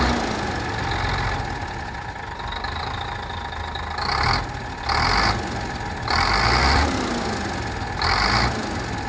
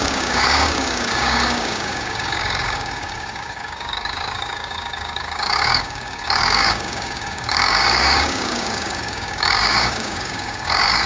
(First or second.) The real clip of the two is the first